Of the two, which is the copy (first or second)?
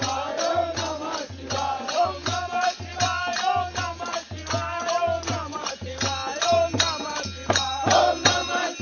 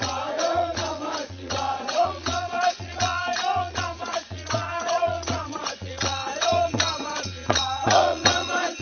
second